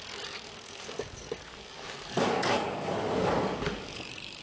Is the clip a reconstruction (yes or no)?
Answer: yes